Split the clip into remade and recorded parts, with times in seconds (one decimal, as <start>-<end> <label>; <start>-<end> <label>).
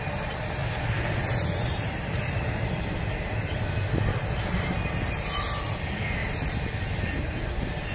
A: 0.0-0.6 recorded; 0.6-2.9 remade; 2.9-6.2 recorded; 6.2-7.4 remade; 7.4-7.9 recorded